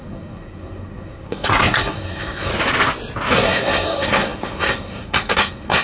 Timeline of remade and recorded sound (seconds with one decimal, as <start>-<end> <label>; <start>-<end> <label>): 0.0-2.5 remade; 2.5-3.3 recorded; 3.3-5.8 remade